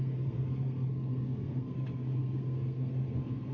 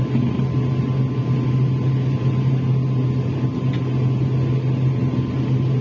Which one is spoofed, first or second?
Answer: first